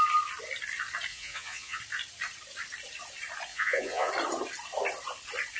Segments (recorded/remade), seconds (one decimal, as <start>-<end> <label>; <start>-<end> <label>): 0.0-1.1 recorded; 1.1-1.8 remade; 1.8-3.5 recorded; 3.5-4.1 remade; 4.1-5.6 recorded

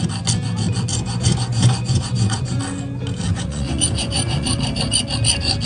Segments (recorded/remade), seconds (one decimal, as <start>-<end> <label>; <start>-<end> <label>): 0.0-0.9 recorded; 0.9-2.6 remade; 2.6-3.3 recorded; 3.3-4.6 remade; 4.6-5.7 recorded

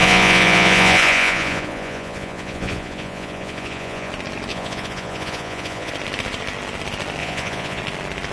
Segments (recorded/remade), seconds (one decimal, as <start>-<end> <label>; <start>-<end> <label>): 0.0-4.1 remade; 4.1-4.5 recorded; 4.5-5.9 remade; 5.9-7.2 recorded; 7.2-7.8 remade; 7.8-8.3 recorded

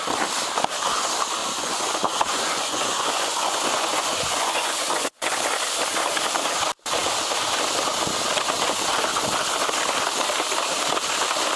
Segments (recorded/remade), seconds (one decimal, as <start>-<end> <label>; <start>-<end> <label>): 0.0-1.4 recorded; 1.4-5.3 remade; 5.3-11.6 recorded

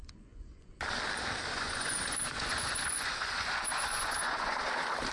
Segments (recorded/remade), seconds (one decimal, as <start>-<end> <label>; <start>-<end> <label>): 0.0-0.7 remade; 0.7-1.5 recorded; 1.5-4.6 remade; 4.6-5.1 recorded